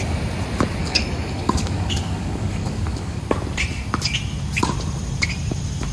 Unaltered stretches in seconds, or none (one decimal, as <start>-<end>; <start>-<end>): 0.0-0.8; 3.2-5.9